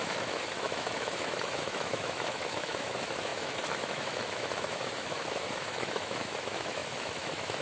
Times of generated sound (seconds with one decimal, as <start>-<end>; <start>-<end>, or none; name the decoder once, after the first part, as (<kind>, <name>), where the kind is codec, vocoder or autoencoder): 0.0-7.6 (autoencoder, DAC-VAE)